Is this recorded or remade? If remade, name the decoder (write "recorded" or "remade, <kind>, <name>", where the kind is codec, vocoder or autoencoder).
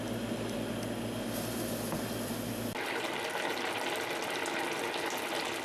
recorded